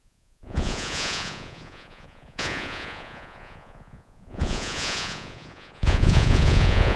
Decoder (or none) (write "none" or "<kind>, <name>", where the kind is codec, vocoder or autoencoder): vocoder, Vocos